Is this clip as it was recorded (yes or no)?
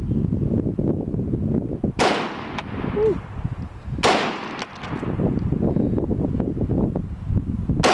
yes